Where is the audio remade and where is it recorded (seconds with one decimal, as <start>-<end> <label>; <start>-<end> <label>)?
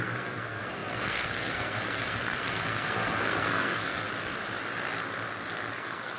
0.0-4.0 remade; 4.0-5.7 recorded; 5.7-6.2 remade